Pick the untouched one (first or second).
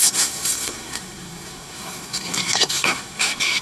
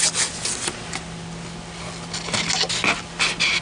second